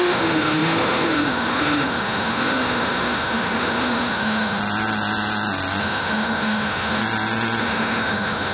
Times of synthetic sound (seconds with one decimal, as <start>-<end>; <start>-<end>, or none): 0.0-4.6; 5.8-7.0; 7.6-8.5